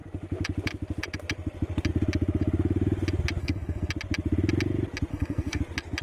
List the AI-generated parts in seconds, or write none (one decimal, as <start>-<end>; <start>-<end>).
3.4-3.9; 5.1-5.6

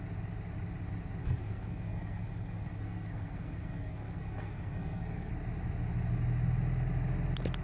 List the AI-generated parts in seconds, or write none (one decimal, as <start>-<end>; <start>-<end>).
1.2-5.3

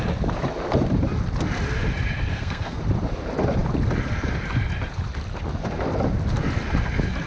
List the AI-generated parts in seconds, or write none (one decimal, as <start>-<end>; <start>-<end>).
2.3-2.8